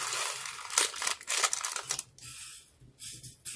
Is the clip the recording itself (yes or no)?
yes